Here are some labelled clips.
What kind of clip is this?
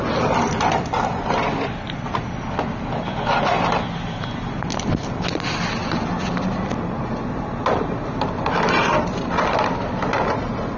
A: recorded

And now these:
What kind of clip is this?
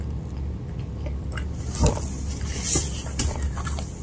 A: recorded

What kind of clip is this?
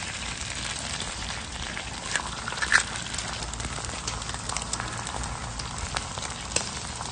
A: recorded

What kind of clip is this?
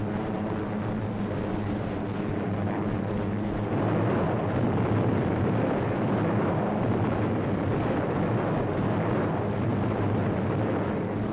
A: recorded